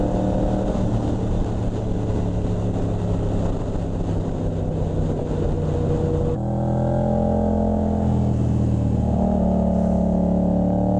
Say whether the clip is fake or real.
real